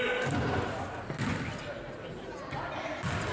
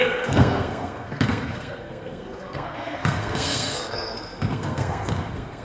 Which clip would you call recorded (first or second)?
first